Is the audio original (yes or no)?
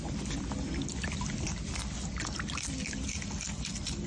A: yes